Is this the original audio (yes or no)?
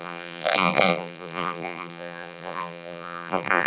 no